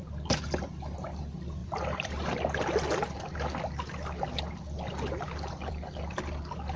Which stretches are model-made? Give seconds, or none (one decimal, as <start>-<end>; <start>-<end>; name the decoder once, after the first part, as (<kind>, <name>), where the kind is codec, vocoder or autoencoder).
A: none